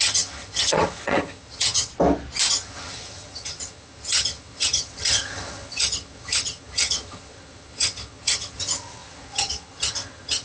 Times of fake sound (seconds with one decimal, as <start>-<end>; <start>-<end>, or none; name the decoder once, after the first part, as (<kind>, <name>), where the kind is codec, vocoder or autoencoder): 0.0-1.9 (vocoder, HiFi-GAN); 2.5-10.4